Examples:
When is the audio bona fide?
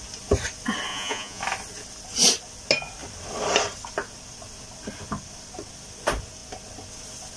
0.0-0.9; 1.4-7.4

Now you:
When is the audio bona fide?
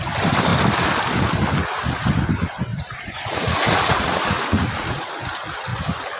0.0-2.7; 5.1-6.2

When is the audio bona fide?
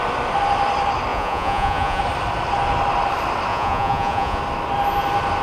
0.0-1.1; 2.0-3.5; 4.4-5.4